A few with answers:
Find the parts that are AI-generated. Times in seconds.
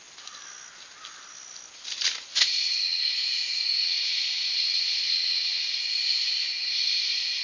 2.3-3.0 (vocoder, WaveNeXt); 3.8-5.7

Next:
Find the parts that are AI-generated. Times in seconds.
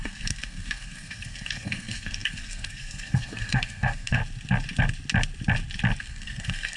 0.0-4.2 (codec, SNAC); 6.0-6.8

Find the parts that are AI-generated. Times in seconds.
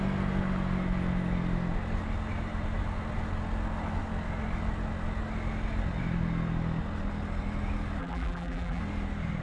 8.0-8.8 (vocoder, BigVGAN v2)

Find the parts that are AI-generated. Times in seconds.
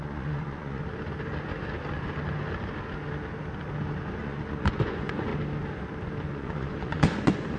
0.0-0.8 (vocoder, Vocos); 4.2-5.3; 6.3-7.6